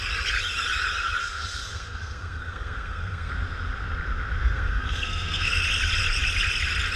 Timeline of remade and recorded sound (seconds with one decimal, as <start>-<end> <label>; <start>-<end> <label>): 0.0-1.2 recorded; 1.2-3.3 remade; 3.3-4.4 recorded; 4.4-5.5 remade; 5.5-7.0 recorded